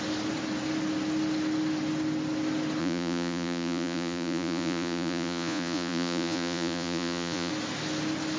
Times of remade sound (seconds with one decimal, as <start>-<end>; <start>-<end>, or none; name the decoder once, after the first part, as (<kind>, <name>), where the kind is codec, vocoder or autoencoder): 2.8-7.5 (vocoder, Vocos)